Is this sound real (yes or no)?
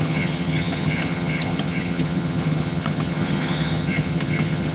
no